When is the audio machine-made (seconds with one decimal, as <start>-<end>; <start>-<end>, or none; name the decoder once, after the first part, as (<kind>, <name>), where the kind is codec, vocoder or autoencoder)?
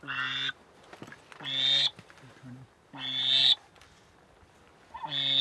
none